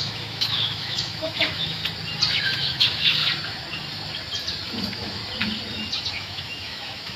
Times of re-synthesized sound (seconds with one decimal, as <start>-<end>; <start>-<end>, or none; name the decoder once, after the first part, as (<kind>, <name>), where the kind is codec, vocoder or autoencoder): 0.0-1.8 (autoencoder, DAC-VAE); 2.4-3.2; 4.8-5.2; 6.1-7.2